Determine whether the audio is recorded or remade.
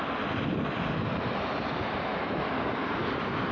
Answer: recorded